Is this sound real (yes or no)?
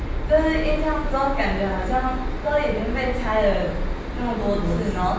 yes